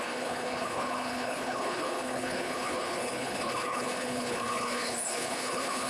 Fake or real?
fake